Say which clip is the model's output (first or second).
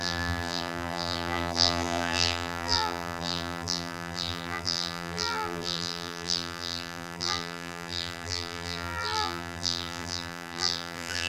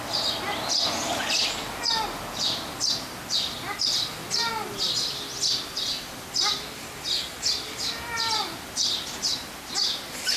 first